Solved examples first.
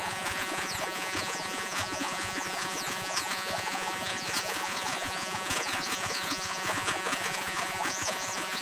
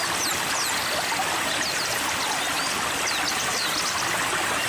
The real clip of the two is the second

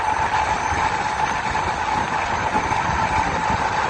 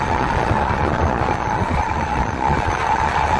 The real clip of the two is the first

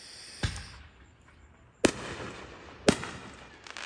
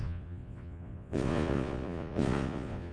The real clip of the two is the first